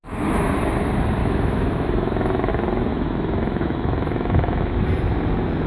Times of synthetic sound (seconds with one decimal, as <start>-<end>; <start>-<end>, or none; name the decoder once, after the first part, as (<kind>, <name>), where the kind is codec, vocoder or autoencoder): 1.2-2.5 (autoencoder, DAC-VAE); 2.9-4.7